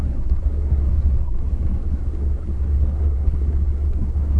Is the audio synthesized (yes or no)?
yes